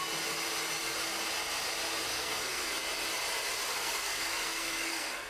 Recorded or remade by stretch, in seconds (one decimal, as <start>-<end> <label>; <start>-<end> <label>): 0.0-2.1 recorded; 2.1-2.7 remade; 2.7-3.7 recorded; 3.7-5.3 remade